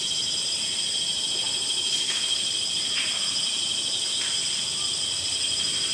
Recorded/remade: recorded